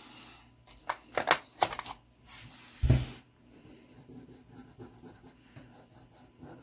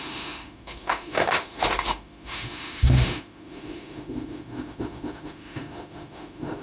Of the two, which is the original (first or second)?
first